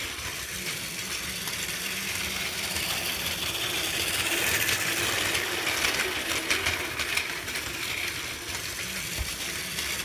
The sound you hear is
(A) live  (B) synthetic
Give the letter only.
A